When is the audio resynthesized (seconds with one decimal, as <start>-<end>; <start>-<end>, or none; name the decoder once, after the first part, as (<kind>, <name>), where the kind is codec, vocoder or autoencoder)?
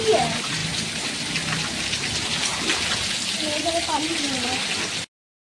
none